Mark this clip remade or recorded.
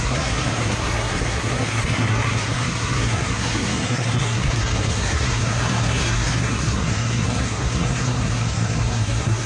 remade